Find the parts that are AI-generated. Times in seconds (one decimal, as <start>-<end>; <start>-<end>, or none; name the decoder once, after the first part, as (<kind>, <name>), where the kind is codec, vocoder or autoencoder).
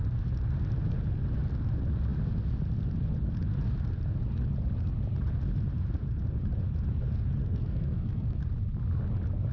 7.4-8.4 (codec, SNAC)